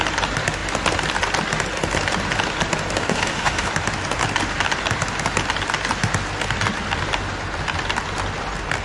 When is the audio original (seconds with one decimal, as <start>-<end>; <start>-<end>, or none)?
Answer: 0.0-3.0; 3.7-8.8